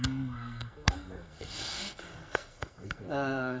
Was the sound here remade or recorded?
remade